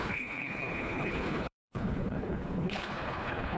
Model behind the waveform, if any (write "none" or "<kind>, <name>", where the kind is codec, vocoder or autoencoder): codec, HILCodec